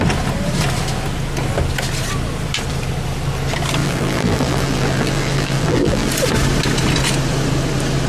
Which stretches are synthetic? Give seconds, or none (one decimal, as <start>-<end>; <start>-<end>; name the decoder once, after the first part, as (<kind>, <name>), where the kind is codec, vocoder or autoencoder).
3.8-6.1 (vocoder, BigVGAN v2)